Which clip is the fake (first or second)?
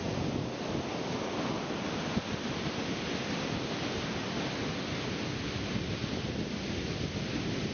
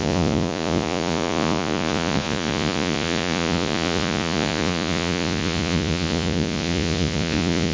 second